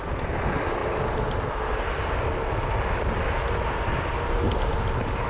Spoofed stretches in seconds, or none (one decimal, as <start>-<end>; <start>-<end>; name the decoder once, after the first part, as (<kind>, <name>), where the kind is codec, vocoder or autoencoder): none